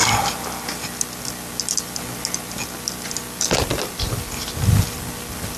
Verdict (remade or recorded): recorded